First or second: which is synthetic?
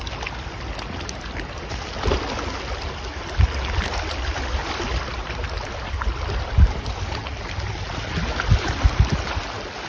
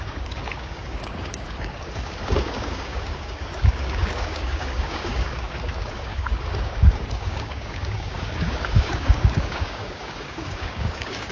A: second